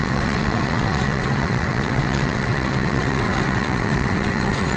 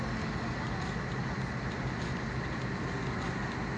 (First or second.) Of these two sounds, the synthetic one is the first